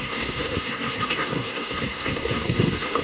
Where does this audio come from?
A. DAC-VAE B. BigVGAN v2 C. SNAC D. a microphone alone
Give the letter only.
C